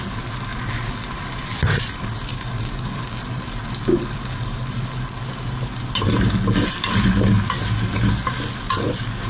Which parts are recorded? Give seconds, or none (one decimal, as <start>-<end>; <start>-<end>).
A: 0.0-2.3; 3.2-3.9; 4.7-9.3